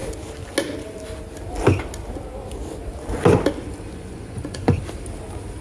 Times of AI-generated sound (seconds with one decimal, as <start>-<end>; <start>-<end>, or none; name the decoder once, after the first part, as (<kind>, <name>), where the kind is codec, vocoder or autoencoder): 3.9-4.8 (vocoder, Vocos)